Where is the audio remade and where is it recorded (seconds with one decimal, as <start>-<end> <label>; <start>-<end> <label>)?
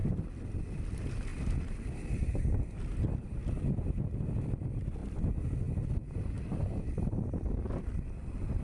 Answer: 0.0-0.6 remade; 0.6-1.3 recorded; 1.3-3.5 remade; 3.5-8.6 recorded